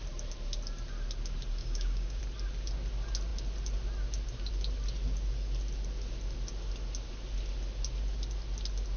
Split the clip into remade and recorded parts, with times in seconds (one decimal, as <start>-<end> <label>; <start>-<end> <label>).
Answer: 0.0-1.6 recorded; 1.6-2.2 remade; 2.2-9.0 recorded